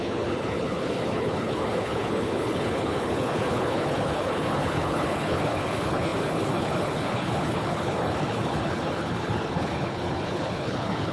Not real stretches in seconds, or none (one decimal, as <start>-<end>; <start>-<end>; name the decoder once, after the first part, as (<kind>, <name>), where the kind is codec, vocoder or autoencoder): 0.0-11.1 (codec, HILCodec)